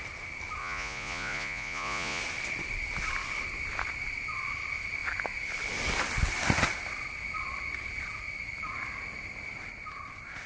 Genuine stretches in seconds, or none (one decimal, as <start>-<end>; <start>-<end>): 0.0-0.6; 2.2-10.5